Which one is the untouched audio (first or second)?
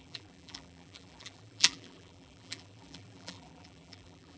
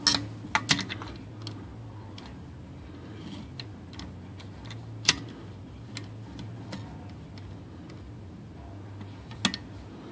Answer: second